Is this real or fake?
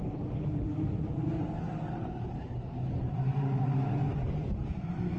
fake